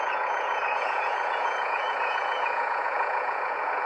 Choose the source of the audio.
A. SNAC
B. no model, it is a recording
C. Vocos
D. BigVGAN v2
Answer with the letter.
C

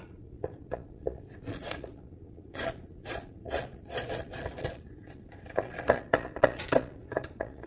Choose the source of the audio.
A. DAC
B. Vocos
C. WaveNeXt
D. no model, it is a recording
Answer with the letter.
B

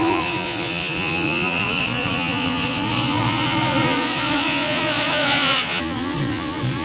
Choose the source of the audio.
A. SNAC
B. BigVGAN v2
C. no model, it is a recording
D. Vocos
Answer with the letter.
D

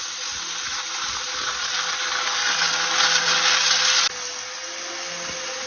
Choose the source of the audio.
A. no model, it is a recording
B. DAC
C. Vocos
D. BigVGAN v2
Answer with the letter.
A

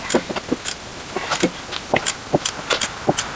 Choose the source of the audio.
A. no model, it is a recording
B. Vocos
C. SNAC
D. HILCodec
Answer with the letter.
A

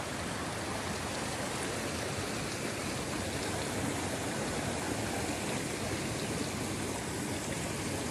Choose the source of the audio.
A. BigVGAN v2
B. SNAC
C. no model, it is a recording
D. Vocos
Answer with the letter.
C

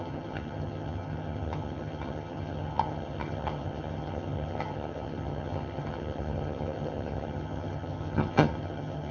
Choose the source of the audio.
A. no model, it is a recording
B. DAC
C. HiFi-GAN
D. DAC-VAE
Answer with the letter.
C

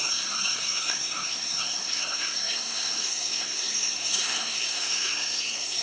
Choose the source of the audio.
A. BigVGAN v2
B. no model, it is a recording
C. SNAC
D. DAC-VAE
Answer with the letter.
C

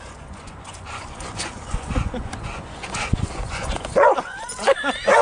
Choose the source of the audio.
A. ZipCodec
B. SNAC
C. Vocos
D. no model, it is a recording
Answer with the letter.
C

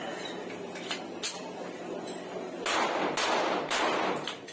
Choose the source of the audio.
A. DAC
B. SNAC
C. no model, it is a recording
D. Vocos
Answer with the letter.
C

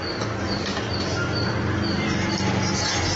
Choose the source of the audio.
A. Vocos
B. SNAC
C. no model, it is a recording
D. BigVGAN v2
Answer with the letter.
C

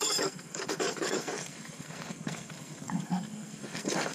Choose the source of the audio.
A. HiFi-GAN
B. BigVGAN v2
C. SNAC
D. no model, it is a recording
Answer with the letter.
C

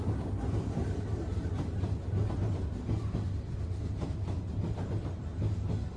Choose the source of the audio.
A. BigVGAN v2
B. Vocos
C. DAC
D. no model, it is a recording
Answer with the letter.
D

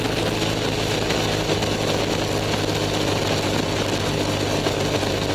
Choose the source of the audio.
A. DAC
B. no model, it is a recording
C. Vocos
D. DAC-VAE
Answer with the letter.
B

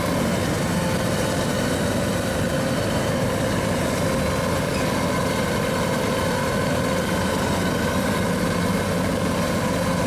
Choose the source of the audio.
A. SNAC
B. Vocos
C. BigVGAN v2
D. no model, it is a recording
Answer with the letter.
D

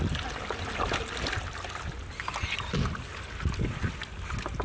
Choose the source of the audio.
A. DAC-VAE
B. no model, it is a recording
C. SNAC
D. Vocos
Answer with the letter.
B